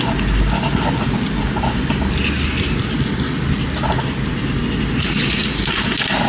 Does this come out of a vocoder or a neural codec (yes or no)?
no